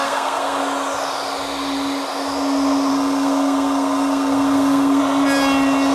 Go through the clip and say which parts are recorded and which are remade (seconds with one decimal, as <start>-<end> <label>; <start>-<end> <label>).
0.0-0.6 remade; 0.6-2.9 recorded; 2.9-5.0 remade; 5.0-5.9 recorded